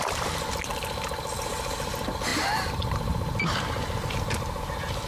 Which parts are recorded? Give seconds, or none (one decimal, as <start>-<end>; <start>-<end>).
0.0-5.1

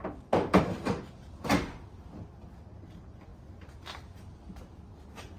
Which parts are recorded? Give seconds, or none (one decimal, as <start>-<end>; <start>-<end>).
0.0-5.4

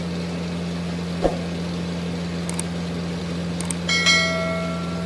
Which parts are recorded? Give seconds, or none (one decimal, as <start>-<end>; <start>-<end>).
0.0-5.1

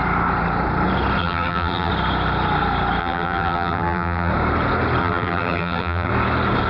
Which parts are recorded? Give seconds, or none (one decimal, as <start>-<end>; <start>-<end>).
0.0-1.2; 1.9-3.0; 4.3-5.0; 6.1-6.7

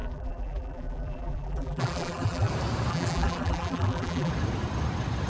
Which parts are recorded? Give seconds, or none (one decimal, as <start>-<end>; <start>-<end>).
2.5-2.9; 4.3-5.3

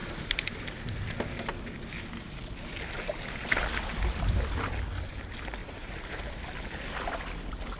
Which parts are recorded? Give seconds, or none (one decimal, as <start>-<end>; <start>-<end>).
0.6-5.6; 6.4-7.8

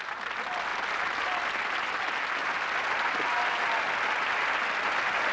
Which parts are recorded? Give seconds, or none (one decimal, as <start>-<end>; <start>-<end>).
0.0-5.3